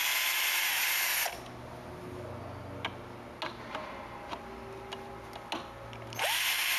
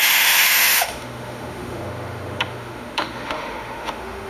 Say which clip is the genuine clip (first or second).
first